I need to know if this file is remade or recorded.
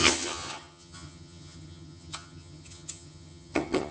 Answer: remade